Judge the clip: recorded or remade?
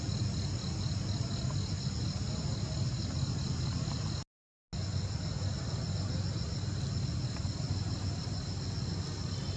recorded